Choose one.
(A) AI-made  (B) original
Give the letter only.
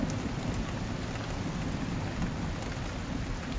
B